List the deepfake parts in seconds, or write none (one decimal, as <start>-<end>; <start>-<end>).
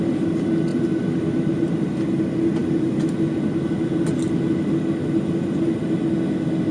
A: none